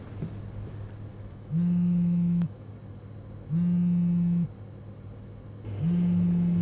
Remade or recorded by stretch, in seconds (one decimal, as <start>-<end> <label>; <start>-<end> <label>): 0.0-1.1 recorded; 1.1-2.7 remade; 2.7-6.6 recorded